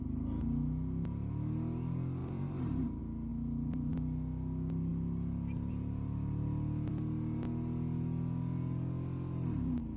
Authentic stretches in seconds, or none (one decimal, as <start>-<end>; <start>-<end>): 0.0-2.2; 2.9-3.3; 3.9-10.0